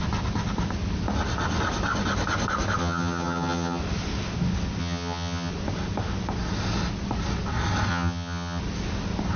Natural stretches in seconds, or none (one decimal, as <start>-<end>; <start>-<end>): 0.0-2.8; 3.8-4.8; 5.5-7.9; 8.6-9.4